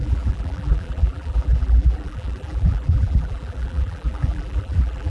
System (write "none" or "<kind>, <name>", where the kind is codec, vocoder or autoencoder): vocoder, BigVGAN v2